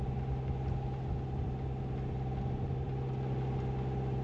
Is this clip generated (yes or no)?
no